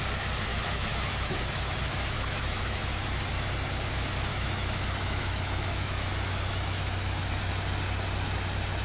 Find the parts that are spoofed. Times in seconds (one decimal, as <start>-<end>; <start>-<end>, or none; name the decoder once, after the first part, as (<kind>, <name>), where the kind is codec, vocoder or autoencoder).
0.5-3.3 (autoencoder, DAC-VAE); 4.3-7.5